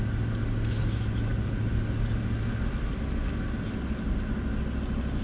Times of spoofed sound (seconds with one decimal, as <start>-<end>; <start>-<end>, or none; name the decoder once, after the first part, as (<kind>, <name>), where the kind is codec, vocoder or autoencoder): none